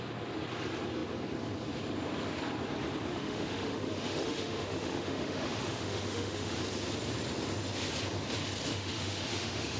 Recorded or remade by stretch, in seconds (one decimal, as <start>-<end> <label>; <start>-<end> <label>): 0.0-3.1 recorded; 3.1-6.6 remade; 6.6-8.7 recorded; 8.7-9.8 remade